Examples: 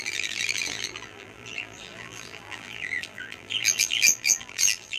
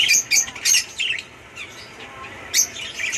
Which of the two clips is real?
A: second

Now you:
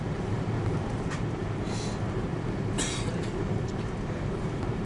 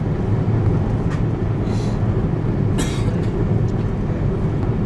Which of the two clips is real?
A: second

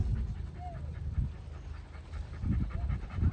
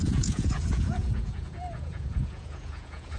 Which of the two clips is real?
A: first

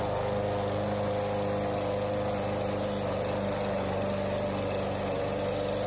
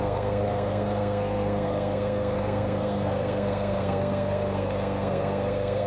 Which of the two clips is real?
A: first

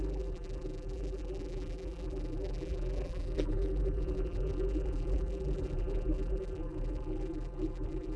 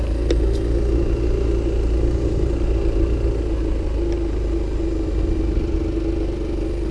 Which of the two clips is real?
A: second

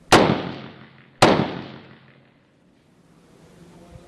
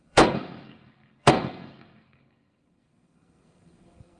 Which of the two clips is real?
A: first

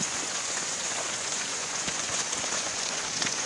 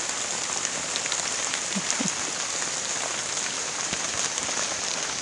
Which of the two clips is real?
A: second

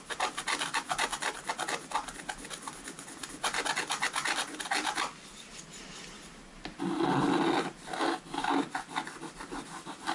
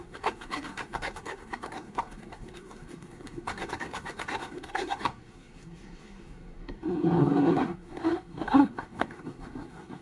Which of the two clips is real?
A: first